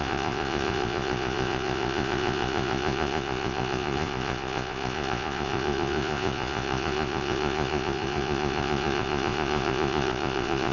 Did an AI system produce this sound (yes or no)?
yes